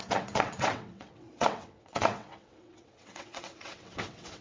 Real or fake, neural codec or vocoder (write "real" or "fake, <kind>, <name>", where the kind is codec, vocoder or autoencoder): fake, vocoder, WaveNeXt